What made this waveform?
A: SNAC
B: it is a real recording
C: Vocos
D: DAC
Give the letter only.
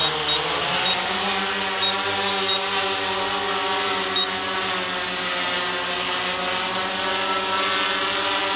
B